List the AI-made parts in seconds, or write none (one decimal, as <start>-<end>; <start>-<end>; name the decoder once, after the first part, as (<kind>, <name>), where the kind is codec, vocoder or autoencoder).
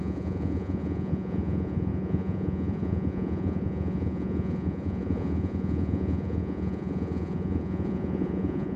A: 0.0-8.8 (vocoder, Vocos)